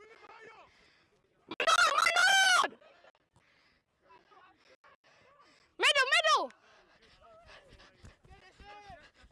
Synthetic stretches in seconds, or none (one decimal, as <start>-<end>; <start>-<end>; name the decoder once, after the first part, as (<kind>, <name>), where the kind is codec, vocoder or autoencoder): 2.2-2.7 (autoencoder, DAC-VAE)